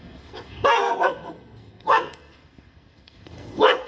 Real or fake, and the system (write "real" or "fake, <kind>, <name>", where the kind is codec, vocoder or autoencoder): fake, codec, SNAC